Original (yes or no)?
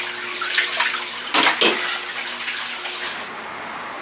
yes